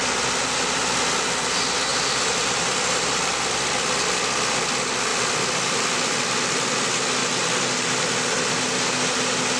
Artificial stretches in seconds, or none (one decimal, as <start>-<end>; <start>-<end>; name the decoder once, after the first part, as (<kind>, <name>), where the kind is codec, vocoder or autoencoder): 1.9-2.6 (vocoder, BigVGAN v2); 5.1-6.7